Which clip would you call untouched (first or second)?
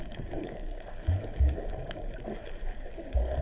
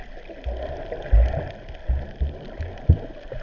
second